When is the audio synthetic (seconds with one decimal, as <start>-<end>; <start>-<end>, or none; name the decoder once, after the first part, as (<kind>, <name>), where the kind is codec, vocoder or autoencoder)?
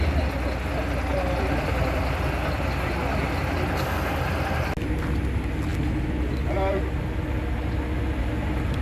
1.1-3.0 (vocoder, BigVGAN v2)